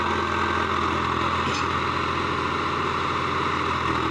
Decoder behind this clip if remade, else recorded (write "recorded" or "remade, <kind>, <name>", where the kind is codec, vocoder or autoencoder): recorded